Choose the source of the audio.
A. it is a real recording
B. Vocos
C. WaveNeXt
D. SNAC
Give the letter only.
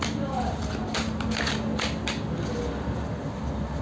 A